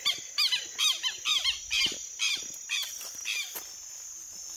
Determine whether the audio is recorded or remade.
recorded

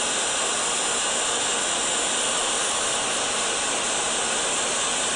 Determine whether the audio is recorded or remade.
recorded